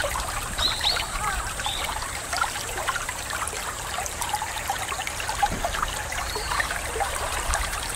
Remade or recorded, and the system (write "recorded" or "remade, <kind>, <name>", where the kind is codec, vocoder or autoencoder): remade, vocoder, BigVGAN v2